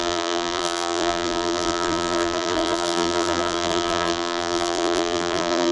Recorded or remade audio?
remade